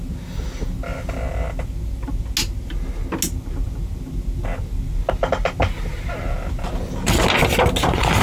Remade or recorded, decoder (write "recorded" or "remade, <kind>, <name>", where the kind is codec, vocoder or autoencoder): recorded